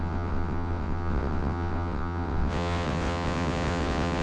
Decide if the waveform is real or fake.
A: fake